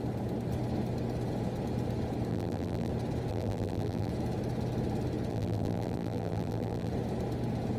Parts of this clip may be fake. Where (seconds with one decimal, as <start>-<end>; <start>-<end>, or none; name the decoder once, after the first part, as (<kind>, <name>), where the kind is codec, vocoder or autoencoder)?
2.3-2.9 (vocoder, BigVGAN v2); 3.3-4.1; 5.3-6.9